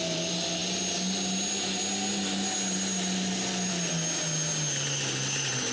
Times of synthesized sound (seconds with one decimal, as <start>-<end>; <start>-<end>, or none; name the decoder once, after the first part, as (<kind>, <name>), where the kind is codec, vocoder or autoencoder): none

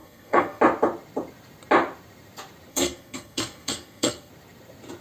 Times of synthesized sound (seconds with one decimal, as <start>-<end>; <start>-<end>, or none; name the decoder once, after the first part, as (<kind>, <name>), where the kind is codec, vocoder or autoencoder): 0.0-0.6 (codec, SNAC); 2.7-4.3

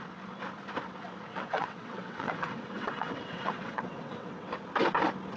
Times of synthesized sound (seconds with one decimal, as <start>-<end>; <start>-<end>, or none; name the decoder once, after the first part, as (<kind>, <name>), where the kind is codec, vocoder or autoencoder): 1.3-4.5 (vocoder, WaveNeXt)

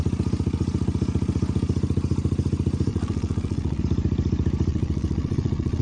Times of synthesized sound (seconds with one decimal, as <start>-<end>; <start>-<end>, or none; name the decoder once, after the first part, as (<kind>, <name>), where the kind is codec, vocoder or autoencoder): 2.9-3.8 (vocoder, Vocos); 4.7-5.8

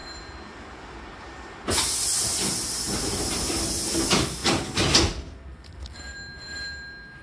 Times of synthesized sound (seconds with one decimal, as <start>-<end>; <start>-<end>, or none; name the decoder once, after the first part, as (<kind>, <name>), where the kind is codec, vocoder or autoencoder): none

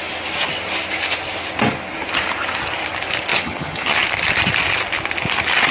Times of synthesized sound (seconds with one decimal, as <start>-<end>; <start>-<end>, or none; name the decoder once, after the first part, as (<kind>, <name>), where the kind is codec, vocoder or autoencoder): 3.3-4.0 (vocoder, HiFi-GAN)